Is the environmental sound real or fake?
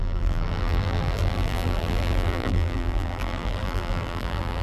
fake